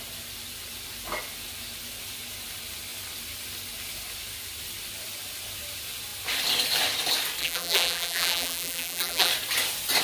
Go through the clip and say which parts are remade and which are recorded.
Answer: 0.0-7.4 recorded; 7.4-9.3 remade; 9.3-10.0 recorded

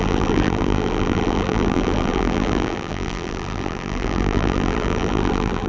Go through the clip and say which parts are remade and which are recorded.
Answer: 0.0-5.7 remade

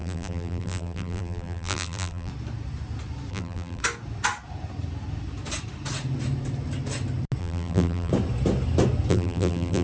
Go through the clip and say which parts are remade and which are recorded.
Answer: 0.0-2.3 remade; 2.3-3.3 recorded; 3.3-3.8 remade; 3.8-7.4 recorded; 7.4-8.1 remade; 8.1-9.1 recorded; 9.1-9.8 remade

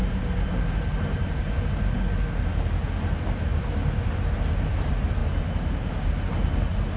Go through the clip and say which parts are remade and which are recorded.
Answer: 0.0-1.8 remade; 1.8-5.2 recorded; 5.2-5.9 remade; 5.9-7.0 recorded

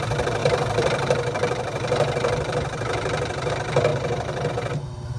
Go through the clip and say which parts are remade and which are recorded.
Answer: 0.0-0.4 recorded; 0.4-3.5 remade; 3.5-3.9 recorded; 3.9-4.5 remade; 4.5-5.2 recorded

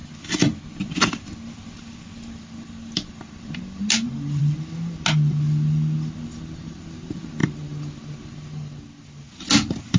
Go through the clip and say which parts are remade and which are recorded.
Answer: 0.0-10.0 recorded

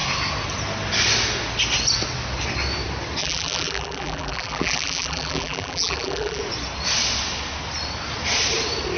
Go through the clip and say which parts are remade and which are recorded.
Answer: 0.0-3.2 recorded; 3.2-6.4 remade; 6.4-9.0 recorded